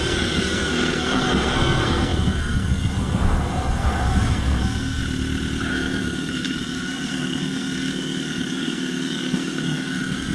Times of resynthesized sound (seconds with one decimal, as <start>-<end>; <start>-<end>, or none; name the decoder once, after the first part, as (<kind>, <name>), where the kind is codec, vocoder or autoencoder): 0.0-5.0 (codec, SNAC); 5.7-10.3